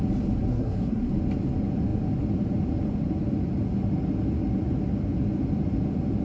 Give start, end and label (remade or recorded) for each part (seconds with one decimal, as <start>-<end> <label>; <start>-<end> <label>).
0.0-0.5 recorded; 0.5-1.1 remade; 1.1-6.2 recorded